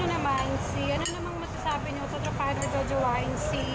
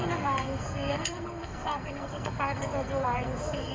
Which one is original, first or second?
first